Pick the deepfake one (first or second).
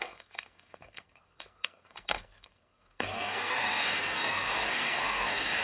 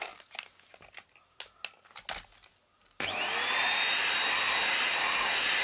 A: first